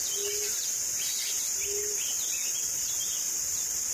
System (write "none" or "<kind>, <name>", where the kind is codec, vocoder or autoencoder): none